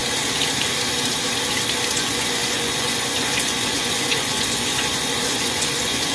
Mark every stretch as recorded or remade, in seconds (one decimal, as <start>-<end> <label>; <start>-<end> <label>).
0.0-1.9 recorded; 1.9-6.1 remade